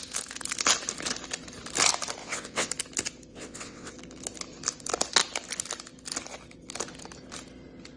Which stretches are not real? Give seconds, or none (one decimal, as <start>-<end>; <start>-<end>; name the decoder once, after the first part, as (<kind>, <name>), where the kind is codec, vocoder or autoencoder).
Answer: 2.2-2.7 (vocoder, WaveNeXt); 3.3-3.9